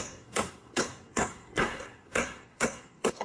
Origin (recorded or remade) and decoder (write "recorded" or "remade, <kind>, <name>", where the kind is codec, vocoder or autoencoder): remade, codec, SNAC